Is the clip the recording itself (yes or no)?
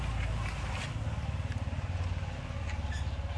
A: yes